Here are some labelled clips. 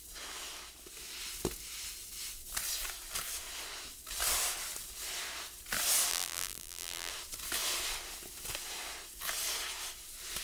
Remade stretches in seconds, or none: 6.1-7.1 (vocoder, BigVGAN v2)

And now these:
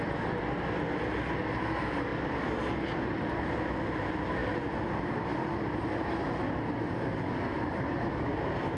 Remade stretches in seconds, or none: 2.1-3.5 (vocoder, BigVGAN v2); 7.5-8.3

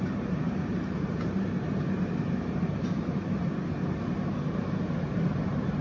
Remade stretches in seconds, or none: 0.0-3.5 (vocoder, BigVGAN v2); 4.3-5.8

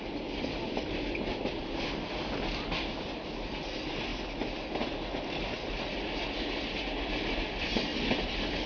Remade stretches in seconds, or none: none

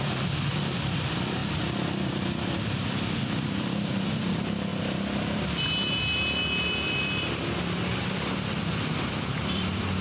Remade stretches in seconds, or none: 0.0-4.7 (vocoder, BigVGAN v2); 8.6-10.0

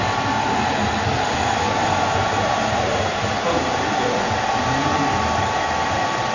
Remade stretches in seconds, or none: 1.8-5.6 (vocoder, BigVGAN v2)

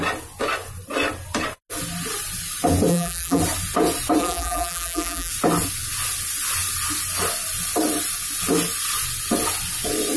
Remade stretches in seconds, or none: 2.9-3.4 (vocoder, BigVGAN v2); 4.2-5.3